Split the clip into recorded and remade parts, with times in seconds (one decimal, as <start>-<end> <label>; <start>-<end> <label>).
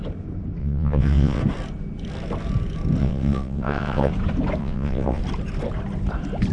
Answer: 0.0-0.6 recorded; 0.6-1.4 remade; 1.4-3.0 recorded; 3.0-4.1 remade; 4.1-4.6 recorded; 4.6-5.2 remade; 5.2-6.5 recorded